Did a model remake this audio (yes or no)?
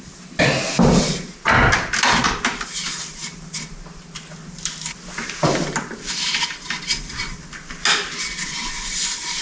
no